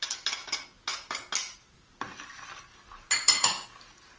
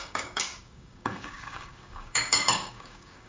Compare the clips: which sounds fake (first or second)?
second